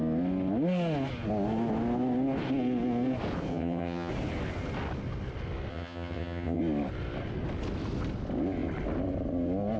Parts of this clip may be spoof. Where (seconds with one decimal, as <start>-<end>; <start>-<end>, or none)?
3.5-4.1; 5.7-6.6